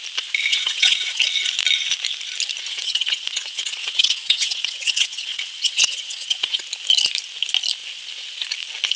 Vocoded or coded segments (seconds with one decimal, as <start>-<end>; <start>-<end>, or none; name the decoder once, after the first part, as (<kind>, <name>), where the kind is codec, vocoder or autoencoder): 0.5-1.2 (vocoder, WaveNeXt); 2.7-6.6